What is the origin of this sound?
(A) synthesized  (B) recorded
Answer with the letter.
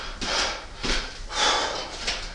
B